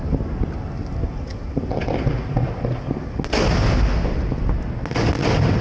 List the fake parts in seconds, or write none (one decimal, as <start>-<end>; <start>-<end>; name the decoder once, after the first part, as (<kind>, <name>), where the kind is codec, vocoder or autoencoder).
none